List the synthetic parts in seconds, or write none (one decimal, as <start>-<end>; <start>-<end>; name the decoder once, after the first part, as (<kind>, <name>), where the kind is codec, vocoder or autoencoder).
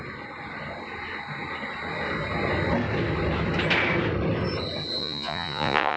5.0-6.0 (vocoder, Vocos)